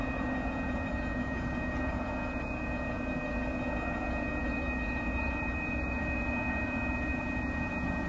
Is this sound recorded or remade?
remade